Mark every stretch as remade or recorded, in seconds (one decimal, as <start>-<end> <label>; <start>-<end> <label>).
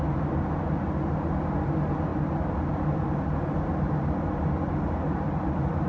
0.0-5.9 recorded